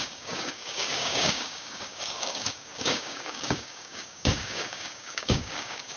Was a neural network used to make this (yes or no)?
yes